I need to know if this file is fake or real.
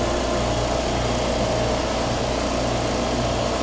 real